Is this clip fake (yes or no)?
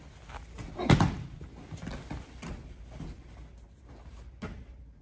no